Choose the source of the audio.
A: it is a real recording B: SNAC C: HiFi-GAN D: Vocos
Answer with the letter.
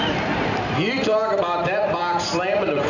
A